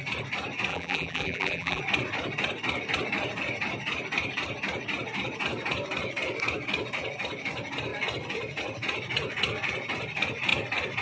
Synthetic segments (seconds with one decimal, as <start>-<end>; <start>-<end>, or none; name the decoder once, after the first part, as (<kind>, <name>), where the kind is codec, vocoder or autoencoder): 0.7-1.8 (vocoder, BigVGAN v2)

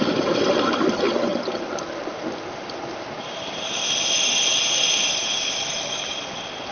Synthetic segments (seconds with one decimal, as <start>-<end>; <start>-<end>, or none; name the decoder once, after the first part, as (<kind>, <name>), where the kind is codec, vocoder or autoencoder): 1.3-1.8 (vocoder, BigVGAN v2)

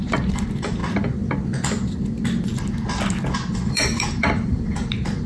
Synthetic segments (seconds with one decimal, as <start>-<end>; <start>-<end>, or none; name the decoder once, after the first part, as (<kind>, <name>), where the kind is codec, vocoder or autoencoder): 0.0-0.8 (vocoder, BigVGAN v2); 3.7-5.3

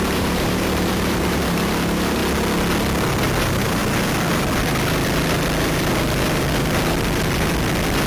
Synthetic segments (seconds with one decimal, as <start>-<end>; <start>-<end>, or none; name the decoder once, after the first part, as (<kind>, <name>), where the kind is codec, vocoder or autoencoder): 0.0-2.2 (vocoder, BigVGAN v2); 3.4-3.8